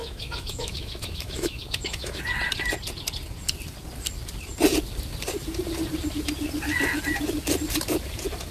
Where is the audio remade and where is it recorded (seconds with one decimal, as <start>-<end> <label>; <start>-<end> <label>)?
0.0-2.2 remade; 2.2-8.5 recorded